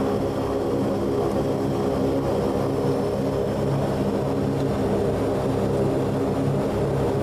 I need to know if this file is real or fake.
real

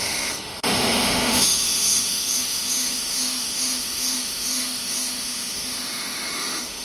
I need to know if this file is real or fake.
fake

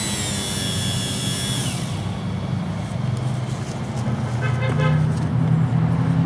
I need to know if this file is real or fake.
real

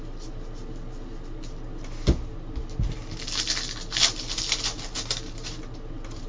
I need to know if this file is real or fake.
real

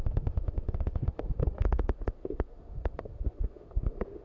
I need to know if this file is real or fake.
fake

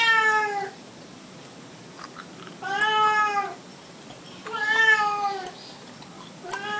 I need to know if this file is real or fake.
real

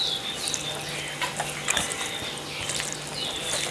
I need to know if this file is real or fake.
real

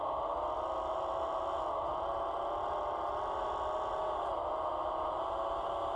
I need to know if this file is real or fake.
real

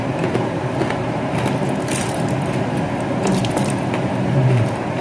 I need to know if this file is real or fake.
real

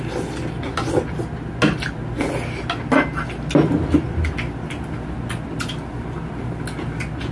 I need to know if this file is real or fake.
real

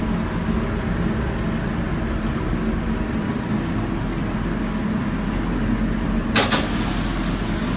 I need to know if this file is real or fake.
real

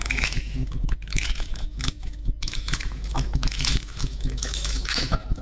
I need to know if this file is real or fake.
fake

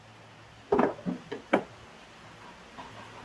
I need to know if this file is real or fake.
real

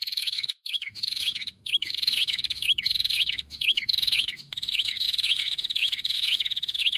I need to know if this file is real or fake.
fake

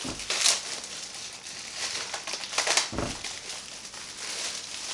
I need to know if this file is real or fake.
real